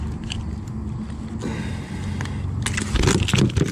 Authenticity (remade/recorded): recorded